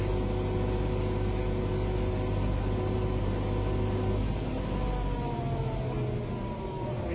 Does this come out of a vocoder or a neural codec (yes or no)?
no